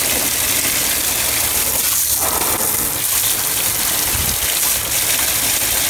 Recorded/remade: recorded